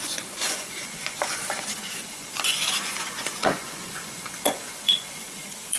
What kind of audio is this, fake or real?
fake